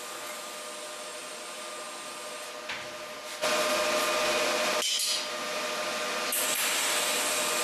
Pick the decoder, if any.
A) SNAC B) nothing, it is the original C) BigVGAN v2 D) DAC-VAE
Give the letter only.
B